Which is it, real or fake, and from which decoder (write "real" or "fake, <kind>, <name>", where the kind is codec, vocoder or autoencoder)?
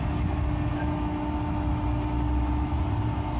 real